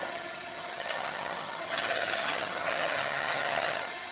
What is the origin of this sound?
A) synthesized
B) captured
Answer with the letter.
A